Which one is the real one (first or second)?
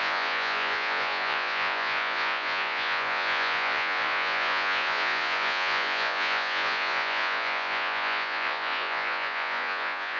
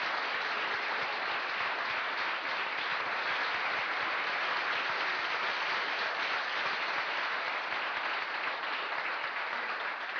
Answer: second